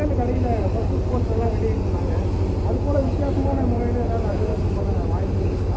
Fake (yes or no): no